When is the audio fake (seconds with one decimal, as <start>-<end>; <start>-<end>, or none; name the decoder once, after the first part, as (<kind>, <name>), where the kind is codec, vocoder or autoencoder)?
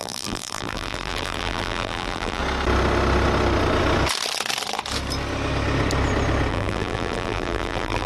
0.0-2.4 (vocoder, BigVGAN v2); 6.5-8.1